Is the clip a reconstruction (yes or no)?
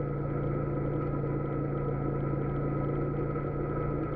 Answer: no